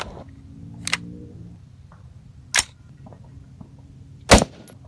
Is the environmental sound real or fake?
real